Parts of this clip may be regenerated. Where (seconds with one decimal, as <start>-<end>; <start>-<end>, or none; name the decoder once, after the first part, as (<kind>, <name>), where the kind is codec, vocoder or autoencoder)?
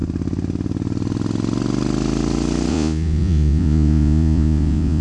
2.7-5.0 (vocoder, Vocos)